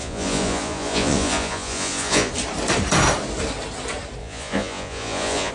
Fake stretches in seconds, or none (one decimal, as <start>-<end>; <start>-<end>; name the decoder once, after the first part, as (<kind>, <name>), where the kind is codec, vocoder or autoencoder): 0.0-2.3 (vocoder, Vocos); 4.2-5.5